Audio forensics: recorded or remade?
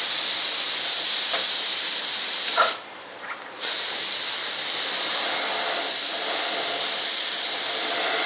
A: recorded